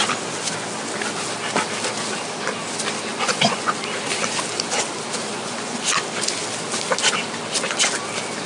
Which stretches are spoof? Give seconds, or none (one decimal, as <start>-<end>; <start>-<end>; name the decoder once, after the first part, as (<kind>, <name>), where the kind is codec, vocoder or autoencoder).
3.1-3.7 (vocoder, Vocos); 5.3-5.9

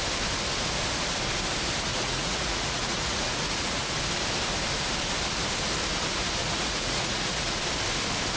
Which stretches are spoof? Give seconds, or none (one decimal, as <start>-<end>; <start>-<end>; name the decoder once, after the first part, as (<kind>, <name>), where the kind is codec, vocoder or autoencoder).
1.9-3.9 (vocoder, Vocos); 6.4-7.6

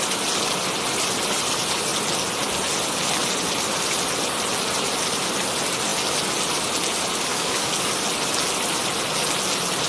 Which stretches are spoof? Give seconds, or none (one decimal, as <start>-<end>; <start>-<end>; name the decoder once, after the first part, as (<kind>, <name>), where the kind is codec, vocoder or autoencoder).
7.3-7.9 (codec, DAC)

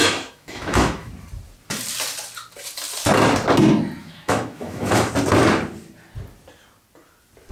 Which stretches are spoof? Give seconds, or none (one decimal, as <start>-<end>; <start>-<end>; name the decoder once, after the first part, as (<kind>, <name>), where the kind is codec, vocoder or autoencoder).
0.0-1.1 (autoencoder, DAC-VAE); 4.0-5.1

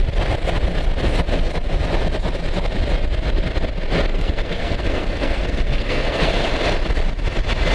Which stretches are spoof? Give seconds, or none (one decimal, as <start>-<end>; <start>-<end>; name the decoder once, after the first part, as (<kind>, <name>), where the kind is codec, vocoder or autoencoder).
4.1-6.5 (codec, SNAC)

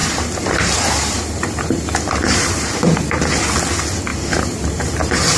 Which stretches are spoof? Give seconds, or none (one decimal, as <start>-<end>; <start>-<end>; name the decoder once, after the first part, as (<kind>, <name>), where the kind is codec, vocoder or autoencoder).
0.0-3.2 (vocoder, BigVGAN v2); 4.1-5.4

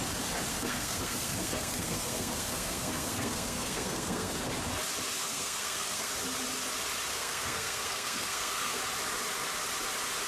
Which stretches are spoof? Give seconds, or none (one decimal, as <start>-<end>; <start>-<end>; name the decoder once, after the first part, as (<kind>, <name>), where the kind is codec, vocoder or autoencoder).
0.5-4.5 (codec, SNAC); 5.2-6.1; 7.1-8.8